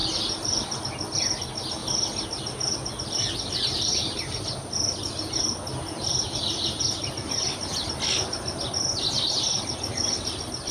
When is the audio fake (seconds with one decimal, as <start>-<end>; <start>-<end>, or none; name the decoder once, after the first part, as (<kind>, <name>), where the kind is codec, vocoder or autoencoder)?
0.0-1.4 (vocoder, BigVGAN v2); 1.8-6.8